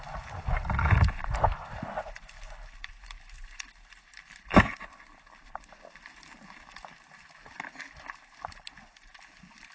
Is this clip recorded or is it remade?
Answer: recorded